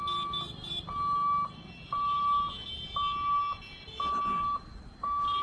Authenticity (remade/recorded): recorded